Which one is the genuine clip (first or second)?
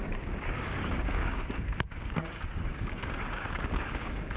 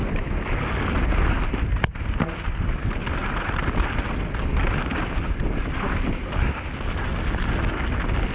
second